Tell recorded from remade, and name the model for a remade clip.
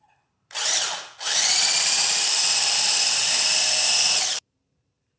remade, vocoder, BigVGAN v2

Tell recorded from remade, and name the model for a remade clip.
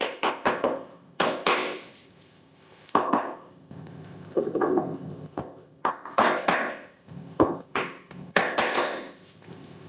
remade, codec, ZipCodec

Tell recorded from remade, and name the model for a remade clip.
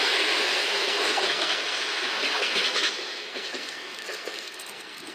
remade, codec, SNAC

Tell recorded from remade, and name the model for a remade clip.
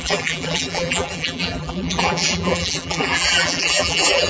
remade, vocoder, BigVGAN v2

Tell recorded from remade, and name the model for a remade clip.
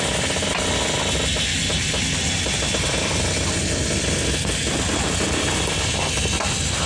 recorded